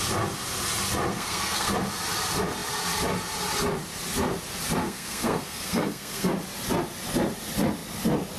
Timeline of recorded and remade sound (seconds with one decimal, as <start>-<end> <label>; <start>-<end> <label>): 0.0-1.1 recorded; 1.1-1.7 remade; 1.7-4.8 recorded; 4.8-6.3 remade; 6.3-8.4 recorded